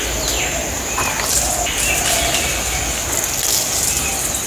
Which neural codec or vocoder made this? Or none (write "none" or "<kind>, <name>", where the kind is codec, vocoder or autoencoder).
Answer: none